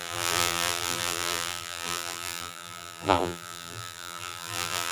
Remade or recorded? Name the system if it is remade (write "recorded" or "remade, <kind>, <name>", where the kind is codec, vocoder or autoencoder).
remade, vocoder, BigVGAN v2